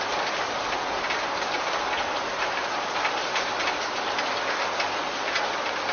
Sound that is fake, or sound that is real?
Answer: real